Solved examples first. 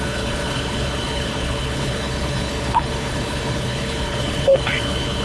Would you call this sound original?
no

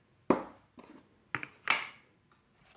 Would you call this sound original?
yes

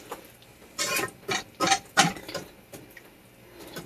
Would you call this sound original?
no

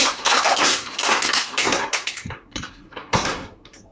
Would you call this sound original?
no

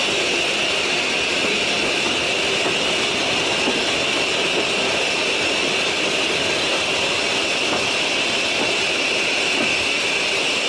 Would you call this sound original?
yes